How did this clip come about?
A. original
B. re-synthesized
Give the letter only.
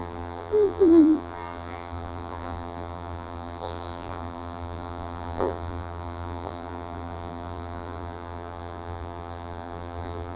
B